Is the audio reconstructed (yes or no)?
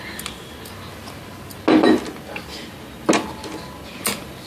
no